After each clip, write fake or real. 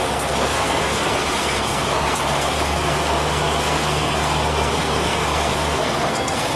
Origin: fake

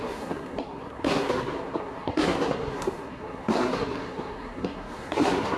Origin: fake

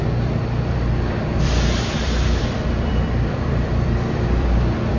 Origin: fake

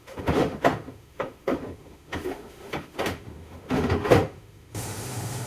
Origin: fake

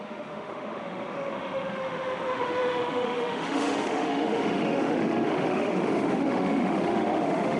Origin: fake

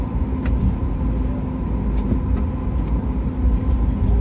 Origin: real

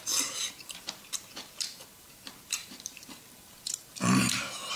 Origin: fake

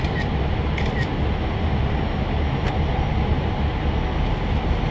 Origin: real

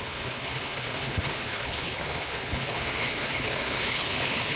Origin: fake